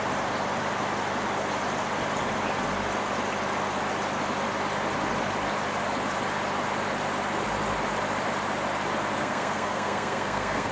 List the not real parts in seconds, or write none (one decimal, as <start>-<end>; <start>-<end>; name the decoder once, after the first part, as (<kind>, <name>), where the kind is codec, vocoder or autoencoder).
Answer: 9.2-10.7 (codec, SNAC)